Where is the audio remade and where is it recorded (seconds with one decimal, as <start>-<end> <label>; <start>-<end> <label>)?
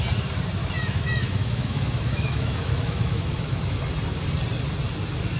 0.0-0.6 recorded; 0.6-3.8 remade; 3.8-5.4 recorded